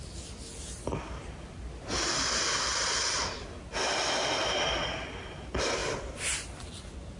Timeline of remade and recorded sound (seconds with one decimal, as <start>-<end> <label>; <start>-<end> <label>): 0.0-7.2 recorded